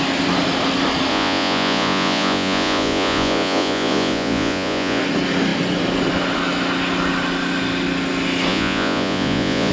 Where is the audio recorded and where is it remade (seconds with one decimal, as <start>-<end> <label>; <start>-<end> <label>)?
0.0-1.1 recorded; 1.1-5.0 remade; 5.0-8.5 recorded; 8.5-9.7 remade